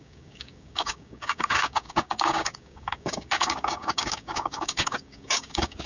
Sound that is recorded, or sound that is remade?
remade